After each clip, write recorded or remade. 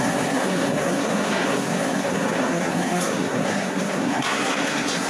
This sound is remade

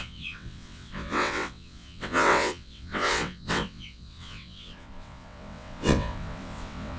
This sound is remade